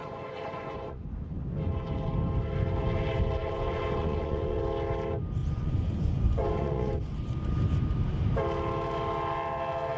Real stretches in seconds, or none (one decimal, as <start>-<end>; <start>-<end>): 1.0-3.4; 4.6-5.4; 6.9-10.0